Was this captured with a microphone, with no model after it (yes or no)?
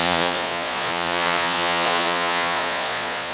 no